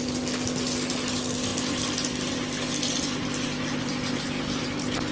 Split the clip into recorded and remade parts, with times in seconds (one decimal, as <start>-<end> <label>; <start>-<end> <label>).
0.0-5.1 recorded